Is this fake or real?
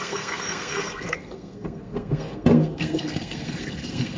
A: fake